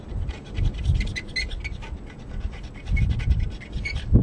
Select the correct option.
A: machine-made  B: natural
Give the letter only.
B